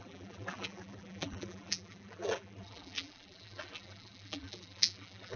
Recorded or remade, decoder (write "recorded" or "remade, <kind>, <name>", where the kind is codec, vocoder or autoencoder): remade, vocoder, BigVGAN v2